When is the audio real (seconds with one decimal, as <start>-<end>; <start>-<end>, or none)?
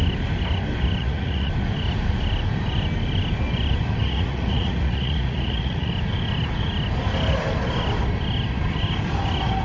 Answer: 0.0-1.0; 1.5-4.0; 5.9-9.6